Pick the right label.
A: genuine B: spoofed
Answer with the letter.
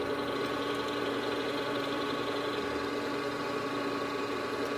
B